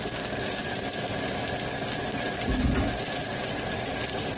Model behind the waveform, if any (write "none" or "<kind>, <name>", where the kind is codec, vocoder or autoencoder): none